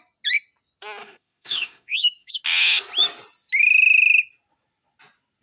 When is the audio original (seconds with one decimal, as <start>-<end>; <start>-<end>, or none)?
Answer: 0.0-1.0; 2.4-5.4